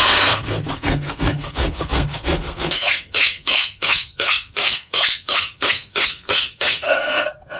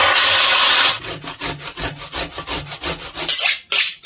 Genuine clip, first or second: second